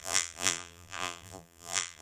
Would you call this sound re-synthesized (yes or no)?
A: yes